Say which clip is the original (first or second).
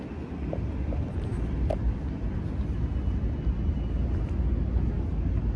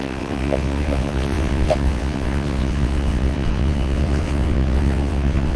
first